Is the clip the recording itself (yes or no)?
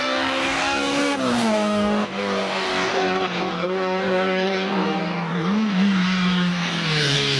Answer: no